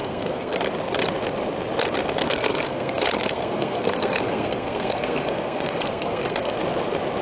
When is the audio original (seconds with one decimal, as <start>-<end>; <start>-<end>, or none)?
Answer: 0.6-2.2; 6.5-7.2